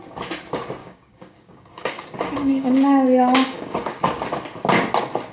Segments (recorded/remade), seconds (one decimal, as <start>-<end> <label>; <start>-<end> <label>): 0.0-0.8 recorded; 0.8-4.0 remade; 4.0-5.3 recorded